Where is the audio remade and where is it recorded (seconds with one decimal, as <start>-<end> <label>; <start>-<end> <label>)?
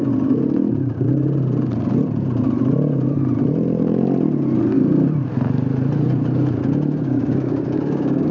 0.0-7.0 recorded; 7.0-8.3 remade